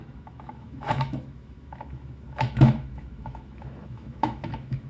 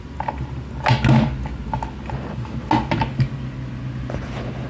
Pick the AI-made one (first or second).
first